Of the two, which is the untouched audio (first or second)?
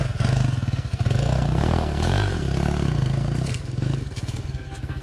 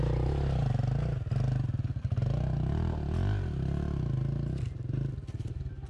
second